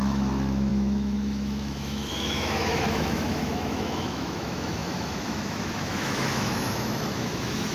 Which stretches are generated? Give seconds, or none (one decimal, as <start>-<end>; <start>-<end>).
0.0-7.7